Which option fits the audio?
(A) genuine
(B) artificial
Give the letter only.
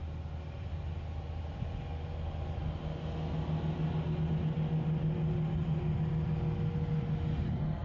A